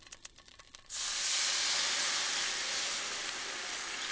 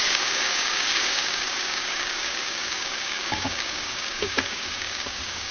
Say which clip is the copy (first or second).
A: second